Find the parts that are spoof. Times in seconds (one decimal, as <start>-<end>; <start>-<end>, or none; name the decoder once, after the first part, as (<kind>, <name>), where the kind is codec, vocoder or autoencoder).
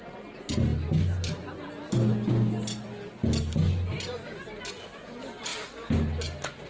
none